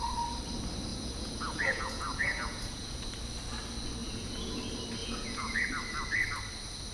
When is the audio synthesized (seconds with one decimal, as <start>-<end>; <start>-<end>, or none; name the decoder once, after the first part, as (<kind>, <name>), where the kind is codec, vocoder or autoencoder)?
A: 0.9-3.0 (vocoder, Vocos); 4.0-4.6; 5.0-5.6